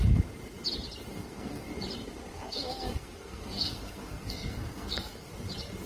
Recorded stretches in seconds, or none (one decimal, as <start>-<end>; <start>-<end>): 0.0-1.1; 1.7-2.3; 5.3-5.9